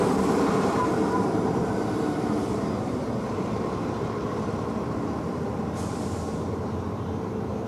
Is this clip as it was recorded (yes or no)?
no